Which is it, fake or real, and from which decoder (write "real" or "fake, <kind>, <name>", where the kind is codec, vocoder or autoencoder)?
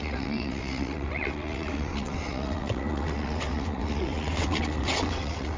fake, vocoder, WaveNeXt